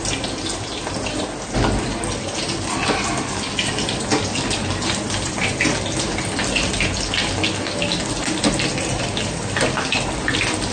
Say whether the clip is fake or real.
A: real